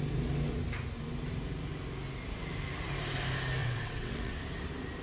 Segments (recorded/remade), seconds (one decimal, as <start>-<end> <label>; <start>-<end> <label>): 0.0-3.6 recorded; 3.6-4.4 remade; 4.4-5.0 recorded